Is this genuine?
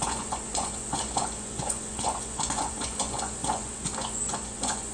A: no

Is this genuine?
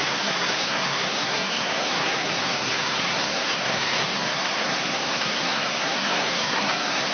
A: no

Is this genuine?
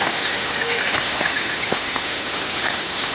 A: no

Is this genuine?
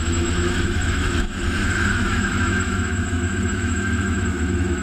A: no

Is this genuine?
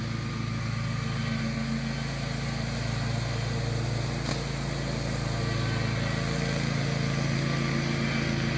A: yes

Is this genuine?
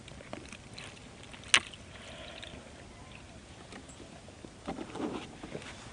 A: yes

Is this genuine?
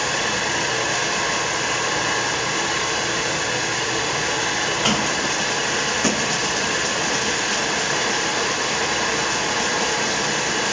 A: no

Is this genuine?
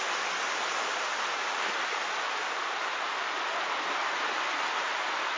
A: yes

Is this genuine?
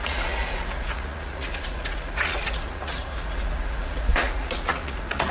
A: no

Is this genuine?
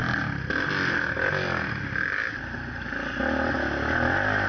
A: yes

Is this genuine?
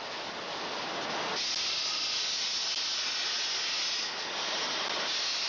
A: yes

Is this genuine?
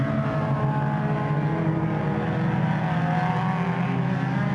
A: yes